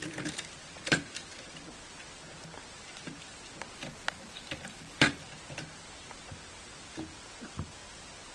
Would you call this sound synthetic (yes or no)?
no